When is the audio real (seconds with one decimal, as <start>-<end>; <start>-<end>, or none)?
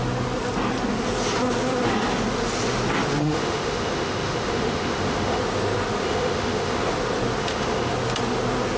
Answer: 0.0-3.2; 5.4-6.0; 6.8-7.4; 7.9-8.8